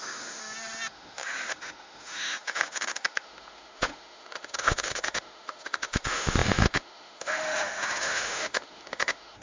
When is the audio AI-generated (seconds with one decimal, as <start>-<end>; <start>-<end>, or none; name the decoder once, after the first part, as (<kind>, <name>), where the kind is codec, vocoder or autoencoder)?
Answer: 0.0-0.4 (autoencoder, DAC-VAE); 0.9-9.4